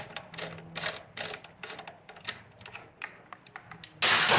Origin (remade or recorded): recorded